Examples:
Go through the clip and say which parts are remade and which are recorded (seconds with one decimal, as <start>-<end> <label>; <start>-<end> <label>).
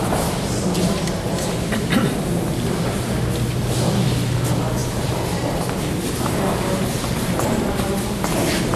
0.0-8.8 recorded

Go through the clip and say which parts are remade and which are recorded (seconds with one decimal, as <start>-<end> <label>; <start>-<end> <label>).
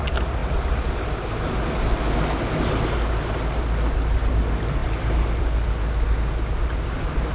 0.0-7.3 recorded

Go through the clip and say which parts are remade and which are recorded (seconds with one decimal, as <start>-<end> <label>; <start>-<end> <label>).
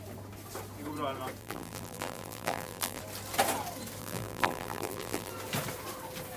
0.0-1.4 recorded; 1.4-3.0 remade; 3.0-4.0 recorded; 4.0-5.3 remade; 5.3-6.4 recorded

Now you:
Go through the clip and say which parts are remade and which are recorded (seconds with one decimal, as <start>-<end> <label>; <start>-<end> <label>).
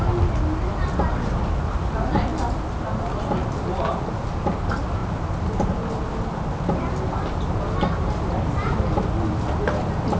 0.0-10.2 recorded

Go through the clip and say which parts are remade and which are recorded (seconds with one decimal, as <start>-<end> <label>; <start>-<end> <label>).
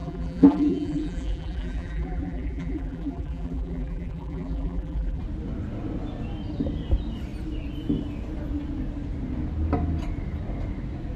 0.0-5.2 remade; 5.2-11.2 recorded